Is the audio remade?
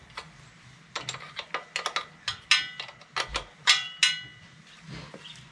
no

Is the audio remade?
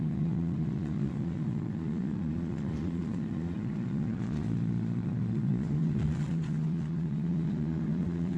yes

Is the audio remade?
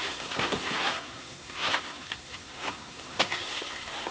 yes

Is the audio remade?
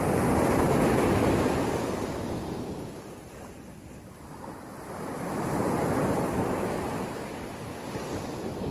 yes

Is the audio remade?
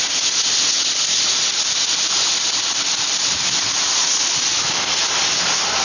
no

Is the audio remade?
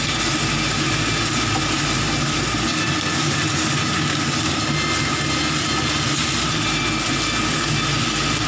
no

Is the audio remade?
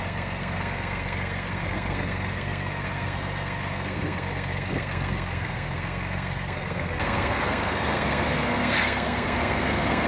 yes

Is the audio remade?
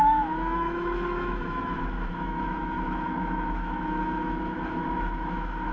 yes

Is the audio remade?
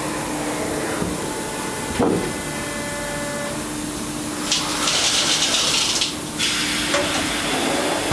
no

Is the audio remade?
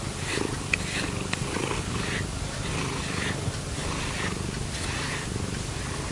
no